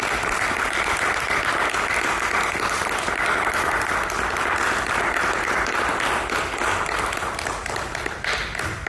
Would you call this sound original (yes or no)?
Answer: yes